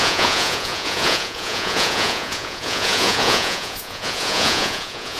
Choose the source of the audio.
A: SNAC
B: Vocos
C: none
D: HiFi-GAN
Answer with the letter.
B